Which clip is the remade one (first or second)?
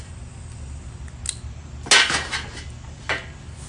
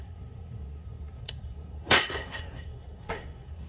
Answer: second